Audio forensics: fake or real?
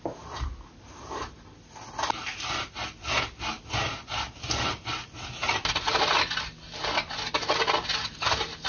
real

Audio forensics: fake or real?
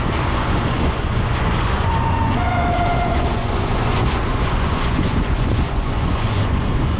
fake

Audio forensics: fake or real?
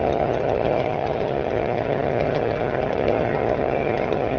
fake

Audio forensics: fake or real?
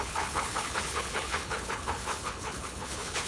fake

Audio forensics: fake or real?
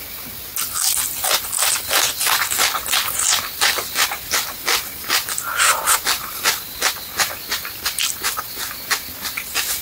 real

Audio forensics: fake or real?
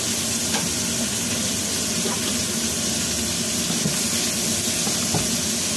real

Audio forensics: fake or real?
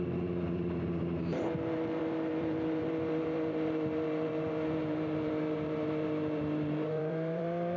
fake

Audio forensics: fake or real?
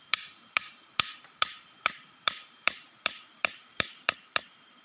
fake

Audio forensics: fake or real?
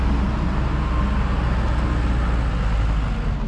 real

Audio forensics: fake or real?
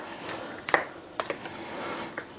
real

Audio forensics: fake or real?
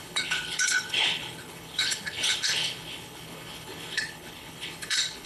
fake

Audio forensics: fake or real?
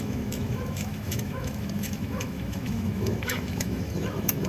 fake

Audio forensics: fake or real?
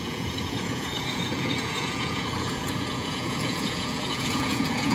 fake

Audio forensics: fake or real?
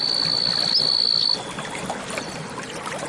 real